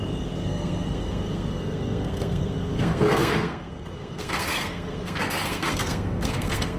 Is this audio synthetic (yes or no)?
yes